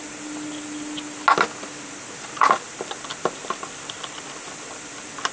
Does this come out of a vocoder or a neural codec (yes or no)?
no